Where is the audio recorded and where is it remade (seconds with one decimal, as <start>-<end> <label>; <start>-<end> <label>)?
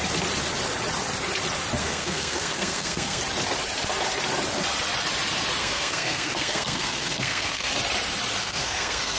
0.0-1.8 recorded; 1.8-3.2 remade; 3.2-5.6 recorded; 5.6-7.7 remade; 7.7-8.4 recorded; 8.4-9.2 remade